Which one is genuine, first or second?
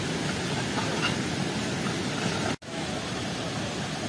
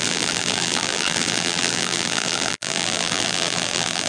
first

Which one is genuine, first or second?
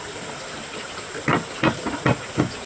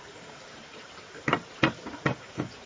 first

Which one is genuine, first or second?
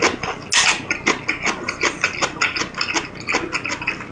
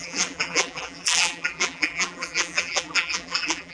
first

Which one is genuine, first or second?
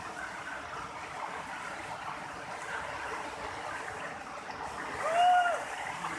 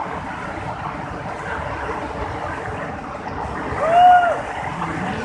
second